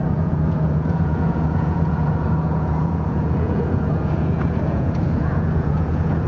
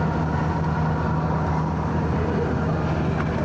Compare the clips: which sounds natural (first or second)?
second